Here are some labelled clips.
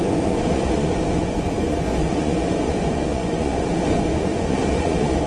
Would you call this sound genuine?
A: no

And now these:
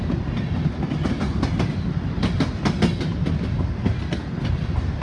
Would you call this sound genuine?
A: yes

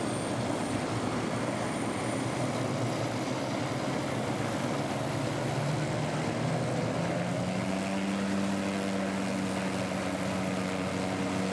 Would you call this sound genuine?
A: yes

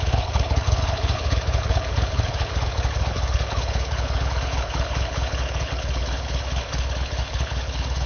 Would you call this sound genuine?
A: no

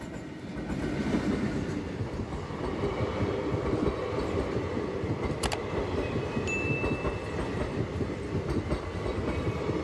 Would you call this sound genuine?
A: yes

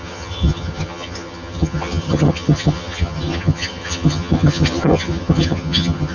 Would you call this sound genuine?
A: no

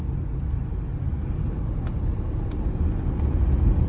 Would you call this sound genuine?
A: yes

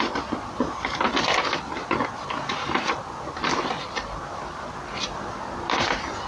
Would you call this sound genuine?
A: yes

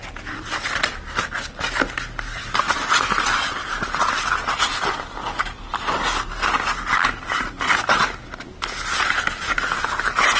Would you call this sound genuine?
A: yes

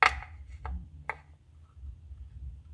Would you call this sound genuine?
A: yes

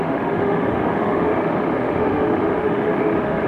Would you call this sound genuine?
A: no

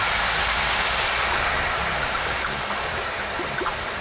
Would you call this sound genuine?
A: yes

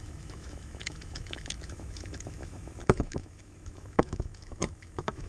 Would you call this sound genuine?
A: no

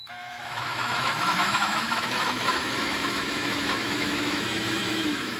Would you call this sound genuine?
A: no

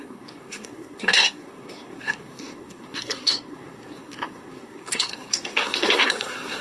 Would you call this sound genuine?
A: no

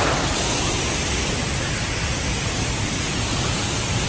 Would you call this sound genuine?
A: yes